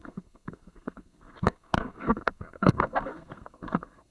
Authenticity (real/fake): fake